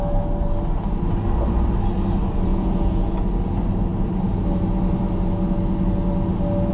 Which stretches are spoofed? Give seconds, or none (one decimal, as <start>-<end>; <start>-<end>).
2.5-3.1